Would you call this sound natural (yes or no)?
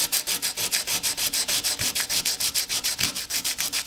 no